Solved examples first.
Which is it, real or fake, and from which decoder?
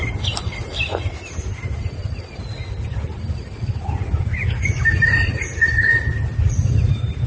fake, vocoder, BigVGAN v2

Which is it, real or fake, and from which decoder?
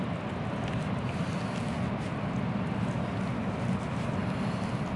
real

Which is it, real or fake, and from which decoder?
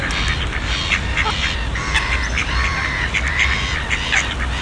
real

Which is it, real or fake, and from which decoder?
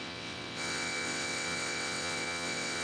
fake, vocoder, WaveNeXt